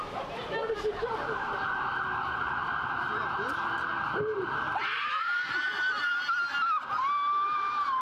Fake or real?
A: fake